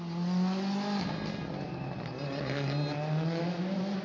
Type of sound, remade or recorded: recorded